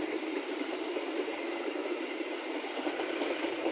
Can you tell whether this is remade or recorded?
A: remade